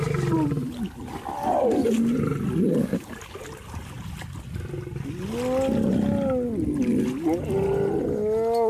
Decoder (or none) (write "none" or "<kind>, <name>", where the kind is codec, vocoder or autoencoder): none